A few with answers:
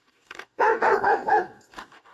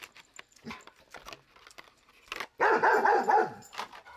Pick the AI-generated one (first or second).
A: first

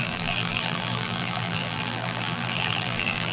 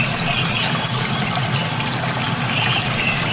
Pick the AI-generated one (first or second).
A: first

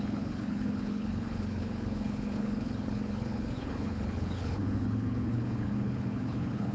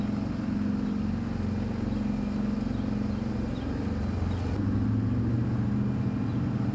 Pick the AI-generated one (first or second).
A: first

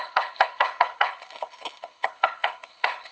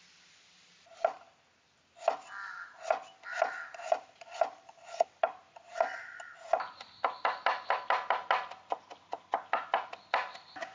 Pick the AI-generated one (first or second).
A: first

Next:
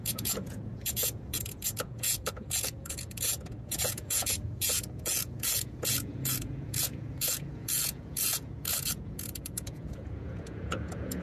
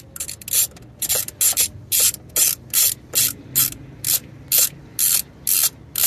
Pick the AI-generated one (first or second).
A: first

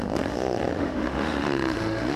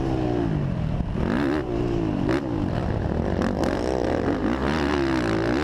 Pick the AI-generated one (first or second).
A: first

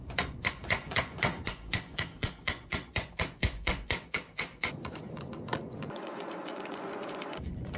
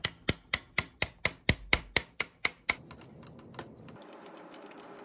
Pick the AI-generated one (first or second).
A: first